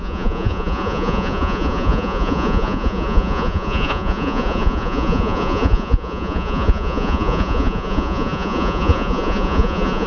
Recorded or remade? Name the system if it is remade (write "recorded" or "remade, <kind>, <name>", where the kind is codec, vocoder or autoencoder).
remade, vocoder, Vocos